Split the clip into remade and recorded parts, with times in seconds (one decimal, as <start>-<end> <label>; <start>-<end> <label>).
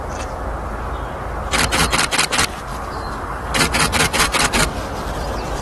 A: 0.0-2.7 recorded; 2.7-4.6 remade; 4.6-5.6 recorded